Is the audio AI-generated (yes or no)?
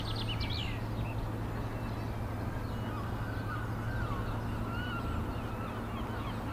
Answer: no